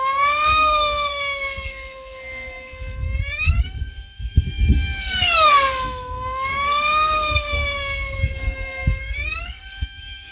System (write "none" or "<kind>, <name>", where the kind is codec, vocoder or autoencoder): codec, SNAC